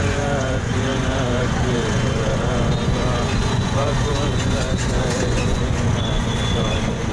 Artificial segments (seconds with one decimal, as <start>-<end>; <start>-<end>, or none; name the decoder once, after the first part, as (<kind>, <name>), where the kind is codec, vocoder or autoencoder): 0.0-7.1 (vocoder, Vocos)